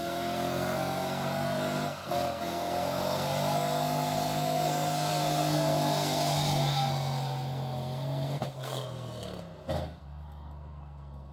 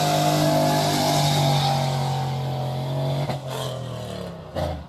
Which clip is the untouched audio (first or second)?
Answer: second